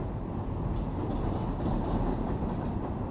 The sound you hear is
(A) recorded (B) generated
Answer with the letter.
A